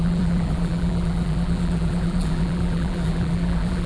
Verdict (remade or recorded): remade